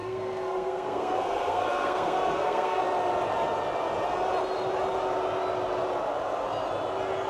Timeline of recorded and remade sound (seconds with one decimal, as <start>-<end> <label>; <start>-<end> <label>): 0.0-2.8 remade; 2.8-7.3 recorded